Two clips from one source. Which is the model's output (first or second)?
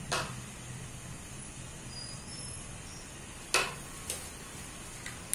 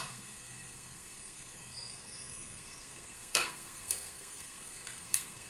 second